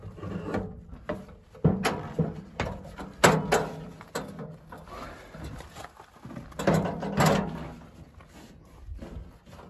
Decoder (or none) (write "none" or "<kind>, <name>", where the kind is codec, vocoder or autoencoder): none